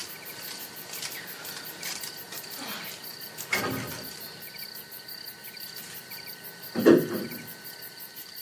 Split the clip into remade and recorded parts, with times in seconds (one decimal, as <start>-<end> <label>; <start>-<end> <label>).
0.0-5.4 recorded; 5.4-8.4 remade